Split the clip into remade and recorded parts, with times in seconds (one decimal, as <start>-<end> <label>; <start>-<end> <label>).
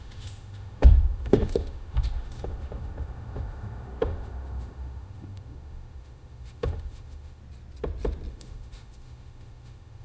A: 0.0-7.4 remade; 7.4-8.3 recorded; 8.3-10.0 remade